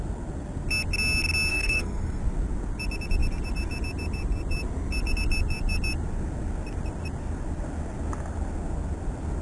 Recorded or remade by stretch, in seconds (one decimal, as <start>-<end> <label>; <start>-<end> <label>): 0.0-1.5 recorded; 1.5-2.2 remade; 2.2-9.4 recorded